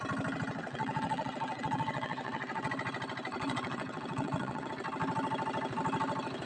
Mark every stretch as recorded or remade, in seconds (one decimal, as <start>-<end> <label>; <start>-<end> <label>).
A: 0.0-0.6 recorded; 0.6-2.7 remade; 2.7-3.3 recorded; 3.3-4.7 remade; 4.7-6.5 recorded